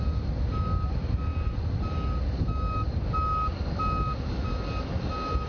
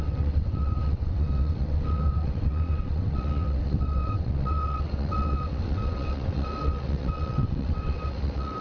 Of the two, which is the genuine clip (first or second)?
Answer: first